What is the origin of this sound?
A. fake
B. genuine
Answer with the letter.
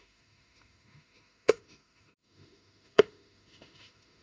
A